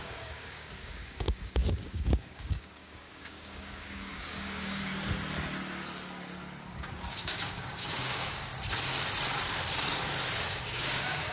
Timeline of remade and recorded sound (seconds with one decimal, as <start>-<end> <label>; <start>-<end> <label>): 0.0-4.9 remade; 4.9-6.7 recorded; 6.7-8.5 remade; 8.5-10.4 recorded; 10.4-11.3 remade